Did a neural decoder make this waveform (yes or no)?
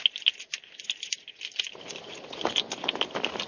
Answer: no